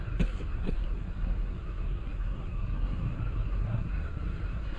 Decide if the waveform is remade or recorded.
remade